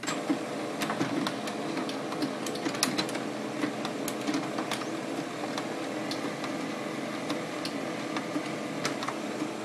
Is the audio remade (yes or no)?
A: no